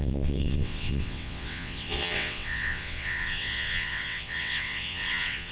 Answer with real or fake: fake